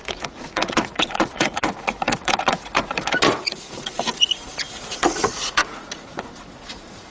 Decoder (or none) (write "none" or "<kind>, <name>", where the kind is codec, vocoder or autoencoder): vocoder, Vocos